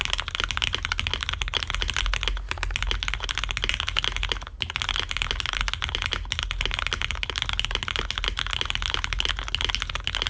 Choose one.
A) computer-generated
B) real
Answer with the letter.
B